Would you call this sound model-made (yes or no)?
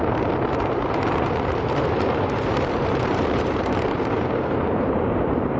yes